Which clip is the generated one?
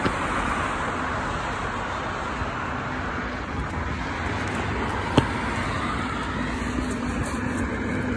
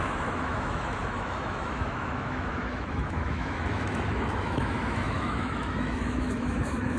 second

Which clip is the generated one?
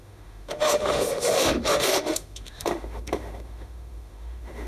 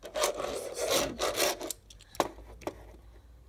first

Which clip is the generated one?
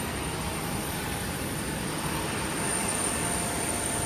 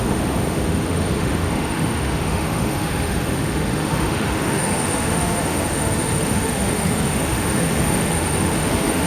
second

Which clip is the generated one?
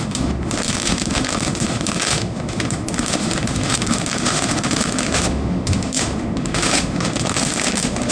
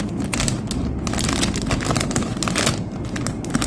first